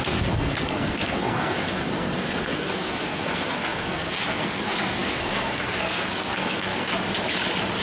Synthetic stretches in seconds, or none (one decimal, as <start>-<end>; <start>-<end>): 0.0-6.9